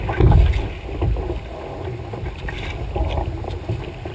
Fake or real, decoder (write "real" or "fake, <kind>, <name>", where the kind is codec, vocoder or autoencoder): real